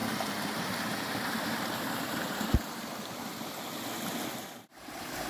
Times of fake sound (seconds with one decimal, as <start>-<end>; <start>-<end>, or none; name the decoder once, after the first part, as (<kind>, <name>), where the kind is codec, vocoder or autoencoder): 0.0-3.2 (vocoder, BigVGAN v2)